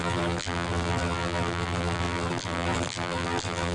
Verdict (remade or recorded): remade